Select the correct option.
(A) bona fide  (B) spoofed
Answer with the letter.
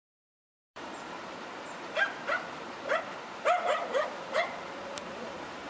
B